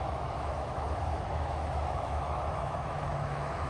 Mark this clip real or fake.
fake